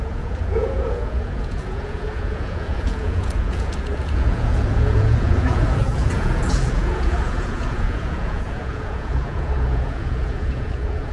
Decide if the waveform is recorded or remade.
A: remade